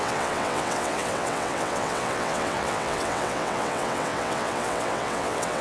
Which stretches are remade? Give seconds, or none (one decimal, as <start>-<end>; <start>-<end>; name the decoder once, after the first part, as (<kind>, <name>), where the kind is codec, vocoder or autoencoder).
0.0-5.6 (vocoder, WaveNeXt)